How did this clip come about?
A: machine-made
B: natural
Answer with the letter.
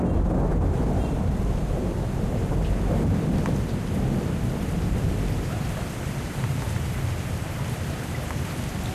A